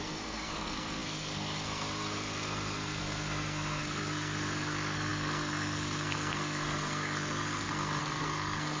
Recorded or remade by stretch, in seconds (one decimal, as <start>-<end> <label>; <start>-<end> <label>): 0.0-8.8 remade